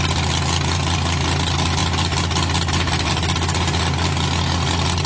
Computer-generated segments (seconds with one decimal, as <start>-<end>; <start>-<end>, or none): none